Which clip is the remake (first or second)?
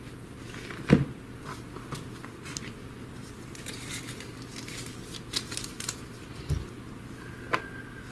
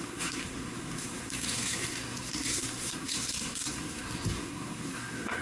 second